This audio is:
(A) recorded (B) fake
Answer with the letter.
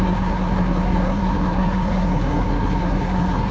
B